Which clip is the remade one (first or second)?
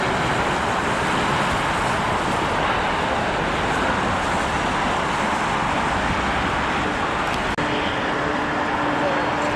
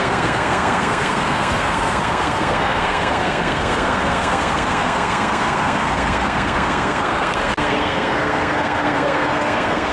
second